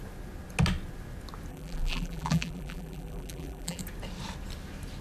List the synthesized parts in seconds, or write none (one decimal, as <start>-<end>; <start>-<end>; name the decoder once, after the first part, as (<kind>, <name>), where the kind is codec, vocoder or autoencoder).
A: 1.5-3.8 (vocoder, BigVGAN v2)